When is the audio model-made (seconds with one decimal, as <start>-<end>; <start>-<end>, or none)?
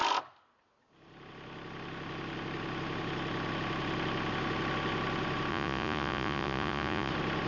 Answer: 5.5-7.1